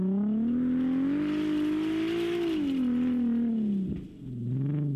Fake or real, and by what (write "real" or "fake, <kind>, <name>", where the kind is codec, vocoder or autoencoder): real